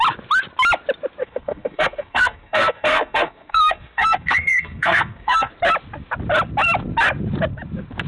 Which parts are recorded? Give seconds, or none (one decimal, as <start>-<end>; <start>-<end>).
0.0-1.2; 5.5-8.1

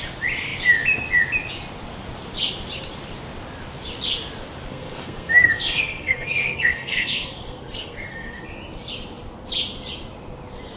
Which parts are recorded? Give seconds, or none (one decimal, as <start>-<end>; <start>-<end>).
0.0-4.7; 8.4-10.8

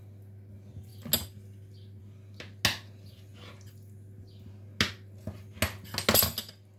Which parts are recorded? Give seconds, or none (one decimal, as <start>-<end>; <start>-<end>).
0.0-6.8